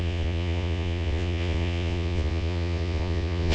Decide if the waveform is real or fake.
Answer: fake